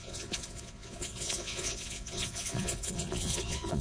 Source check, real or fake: fake